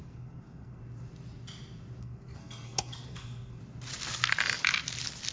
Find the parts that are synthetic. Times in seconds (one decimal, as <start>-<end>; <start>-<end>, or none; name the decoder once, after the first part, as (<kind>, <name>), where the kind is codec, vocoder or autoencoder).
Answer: 0.0-0.8 (codec, SNAC); 2.0-3.6